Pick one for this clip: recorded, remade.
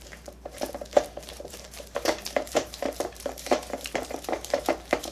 remade